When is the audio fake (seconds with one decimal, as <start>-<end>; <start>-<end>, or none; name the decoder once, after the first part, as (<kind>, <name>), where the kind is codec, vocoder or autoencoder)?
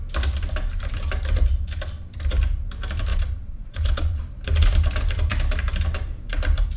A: 3.1-4.2 (vocoder, Vocos)